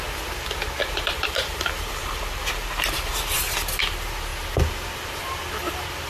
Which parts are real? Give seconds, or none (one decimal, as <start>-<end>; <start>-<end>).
0.0-0.8; 3.8-6.1